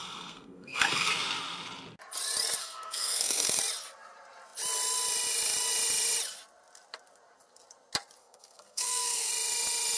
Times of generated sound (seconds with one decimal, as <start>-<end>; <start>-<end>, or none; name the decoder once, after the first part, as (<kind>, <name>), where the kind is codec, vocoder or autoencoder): 0.0-1.1 (codec, SNAC); 2.6-3.6; 8.2-9.3